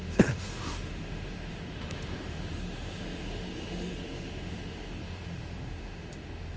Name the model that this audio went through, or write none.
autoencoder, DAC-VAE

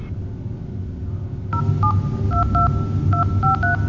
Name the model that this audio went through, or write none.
none